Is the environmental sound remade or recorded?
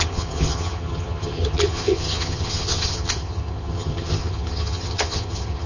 remade